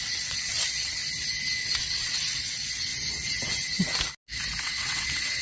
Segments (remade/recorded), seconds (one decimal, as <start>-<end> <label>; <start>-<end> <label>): 0.0-1.0 remade; 1.0-1.6 recorded; 1.6-2.9 remade; 2.9-4.6 recorded; 4.6-5.4 remade